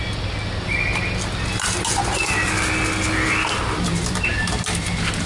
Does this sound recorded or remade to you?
recorded